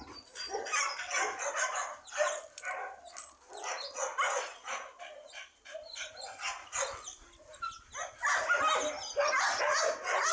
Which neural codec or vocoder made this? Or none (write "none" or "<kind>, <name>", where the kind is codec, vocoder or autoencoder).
none